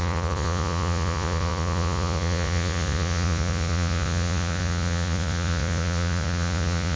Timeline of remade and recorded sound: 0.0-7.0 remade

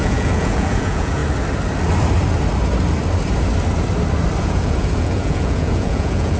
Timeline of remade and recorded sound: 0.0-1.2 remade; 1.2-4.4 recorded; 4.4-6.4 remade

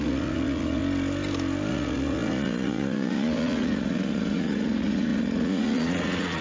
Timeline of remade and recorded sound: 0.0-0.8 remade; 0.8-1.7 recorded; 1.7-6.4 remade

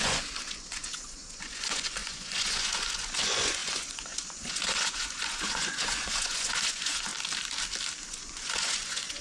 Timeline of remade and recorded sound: 0.0-7.1 remade; 7.1-8.1 recorded; 8.1-9.2 remade

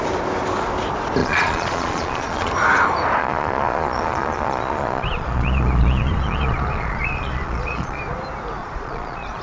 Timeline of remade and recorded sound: 0.0-1.2 recorded; 1.2-2.5 remade; 2.5-3.2 recorded; 3.2-8.0 remade; 8.0-8.6 recorded; 8.6-9.4 remade

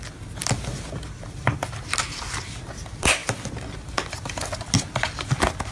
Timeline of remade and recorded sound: 0.0-5.7 recorded

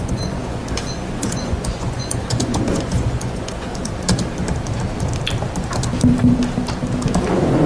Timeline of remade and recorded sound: 0.0-3.9 remade; 3.9-7.3 recorded; 7.3-7.7 remade